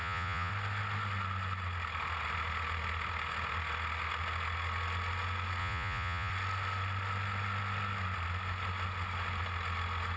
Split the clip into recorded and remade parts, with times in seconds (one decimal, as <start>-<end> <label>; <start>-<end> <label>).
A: 0.0-0.5 remade; 0.5-5.6 recorded; 5.6-6.3 remade; 6.3-10.2 recorded